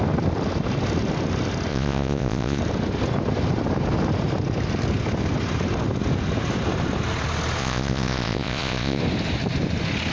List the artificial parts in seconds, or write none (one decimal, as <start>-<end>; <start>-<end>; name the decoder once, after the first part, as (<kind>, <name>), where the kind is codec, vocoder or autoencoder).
1.7-2.6 (vocoder, Vocos); 7.6-9.0